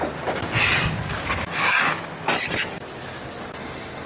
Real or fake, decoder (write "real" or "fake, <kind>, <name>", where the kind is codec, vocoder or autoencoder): real